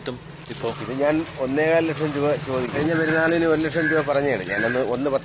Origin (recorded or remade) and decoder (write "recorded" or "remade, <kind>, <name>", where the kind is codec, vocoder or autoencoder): recorded